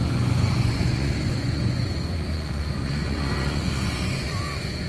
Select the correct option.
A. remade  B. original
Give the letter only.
A